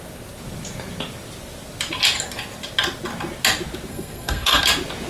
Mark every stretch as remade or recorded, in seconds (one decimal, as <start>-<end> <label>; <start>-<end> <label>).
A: 0.0-3.9 recorded; 3.9-4.6 remade; 4.6-5.1 recorded